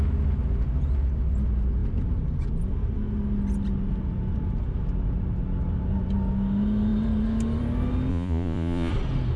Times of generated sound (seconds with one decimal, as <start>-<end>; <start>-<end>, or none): 8.1-8.9